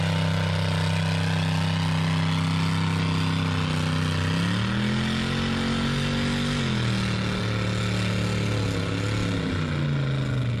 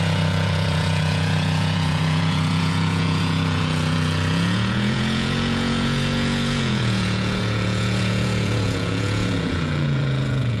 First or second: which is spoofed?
second